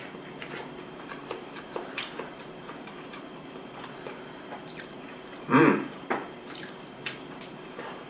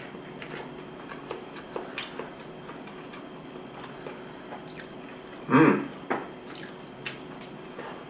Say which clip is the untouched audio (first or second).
second